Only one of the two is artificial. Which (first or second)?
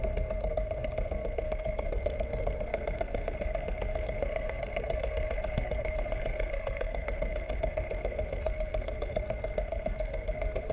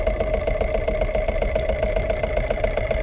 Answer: first